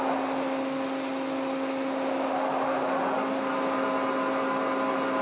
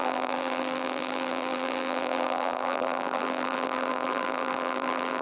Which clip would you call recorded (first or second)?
first